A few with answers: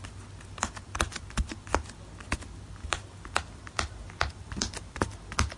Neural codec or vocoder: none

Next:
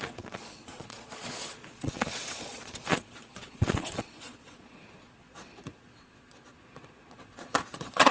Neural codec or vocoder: vocoder, Vocos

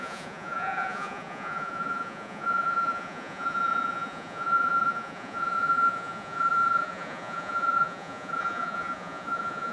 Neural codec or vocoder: vocoder, Vocos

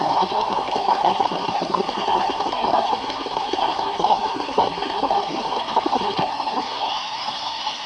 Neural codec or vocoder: codec, SNAC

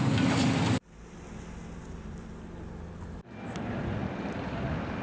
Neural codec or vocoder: none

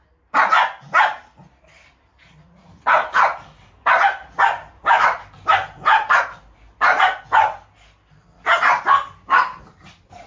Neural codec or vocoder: none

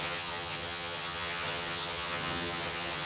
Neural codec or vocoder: vocoder, HiFi-GAN